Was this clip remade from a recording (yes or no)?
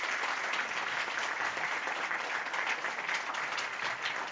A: no